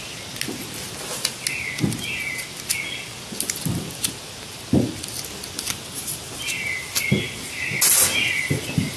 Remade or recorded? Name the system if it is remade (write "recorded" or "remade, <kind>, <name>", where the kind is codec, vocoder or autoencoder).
recorded